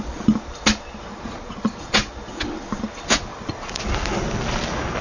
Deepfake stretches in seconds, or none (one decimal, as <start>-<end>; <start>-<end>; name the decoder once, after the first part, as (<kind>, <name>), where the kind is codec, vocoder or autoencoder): 1.1-1.8 (vocoder, Vocos); 3.3-3.8

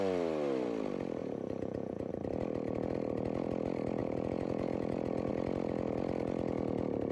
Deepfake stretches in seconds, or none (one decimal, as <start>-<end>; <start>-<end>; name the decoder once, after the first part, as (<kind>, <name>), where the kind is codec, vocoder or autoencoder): 1.2-2.1 (vocoder, Vocos); 4.0-5.3

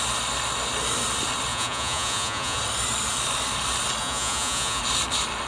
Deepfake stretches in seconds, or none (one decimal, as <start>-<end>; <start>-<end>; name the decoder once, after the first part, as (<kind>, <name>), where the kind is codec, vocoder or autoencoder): 1.5-2.6 (vocoder, Vocos); 4.0-4.8

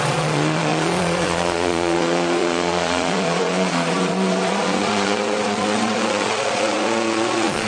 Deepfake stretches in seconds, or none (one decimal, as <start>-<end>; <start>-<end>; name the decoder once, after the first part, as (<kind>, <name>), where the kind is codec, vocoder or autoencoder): 0.0-7.7 (vocoder, Vocos)

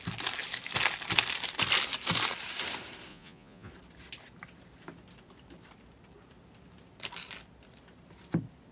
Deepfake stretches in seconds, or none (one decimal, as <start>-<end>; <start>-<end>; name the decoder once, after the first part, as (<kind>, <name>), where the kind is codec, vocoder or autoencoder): 3.1-3.7 (vocoder, Vocos)

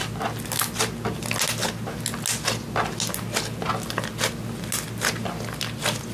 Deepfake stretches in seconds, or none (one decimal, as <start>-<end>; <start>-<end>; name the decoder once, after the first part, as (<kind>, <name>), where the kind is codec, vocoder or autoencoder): none